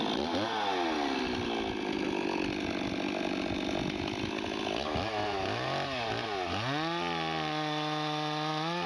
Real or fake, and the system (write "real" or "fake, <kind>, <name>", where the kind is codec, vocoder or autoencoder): real